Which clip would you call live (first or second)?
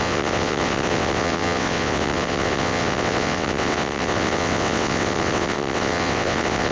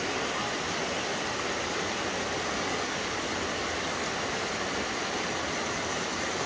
second